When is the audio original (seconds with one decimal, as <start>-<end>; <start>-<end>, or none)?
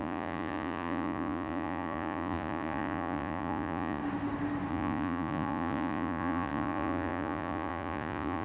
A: 4.0-4.7